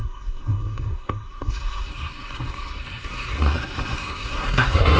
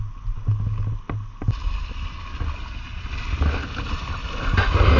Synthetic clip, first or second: first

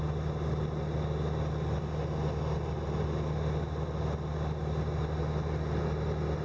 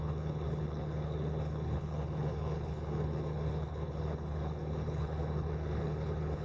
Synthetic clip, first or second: second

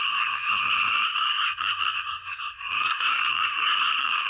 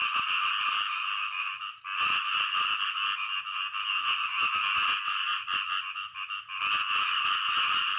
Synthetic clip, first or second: first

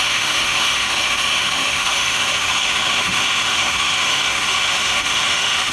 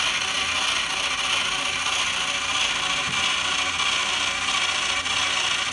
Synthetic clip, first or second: first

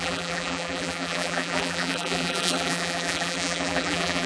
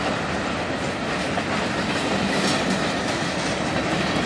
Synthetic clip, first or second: first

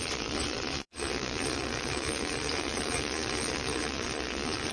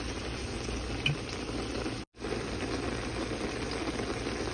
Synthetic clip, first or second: first